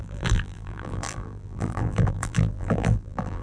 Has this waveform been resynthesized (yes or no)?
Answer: yes